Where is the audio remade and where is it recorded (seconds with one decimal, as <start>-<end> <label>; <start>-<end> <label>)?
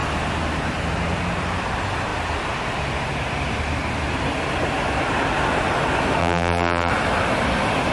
0.0-6.2 recorded; 6.2-6.9 remade; 6.9-7.9 recorded